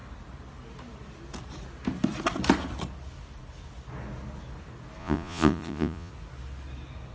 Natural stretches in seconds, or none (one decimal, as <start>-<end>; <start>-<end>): 0.0-5.0; 6.1-7.1